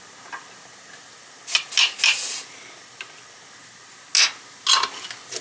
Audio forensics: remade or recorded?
recorded